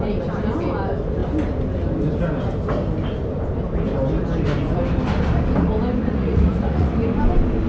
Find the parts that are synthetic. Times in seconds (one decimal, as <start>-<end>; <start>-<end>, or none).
6.0-7.0